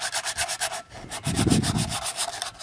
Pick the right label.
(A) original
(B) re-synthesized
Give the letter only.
A